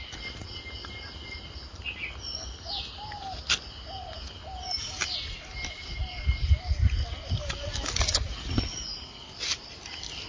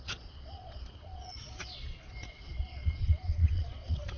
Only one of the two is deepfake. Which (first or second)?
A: second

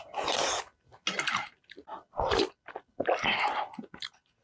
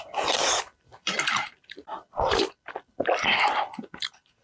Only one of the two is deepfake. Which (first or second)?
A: second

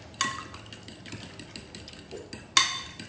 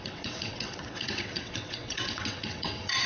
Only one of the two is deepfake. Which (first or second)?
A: second